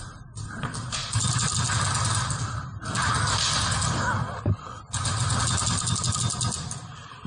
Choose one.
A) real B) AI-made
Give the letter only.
A